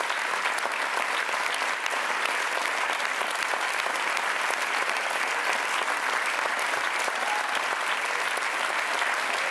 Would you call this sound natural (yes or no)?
yes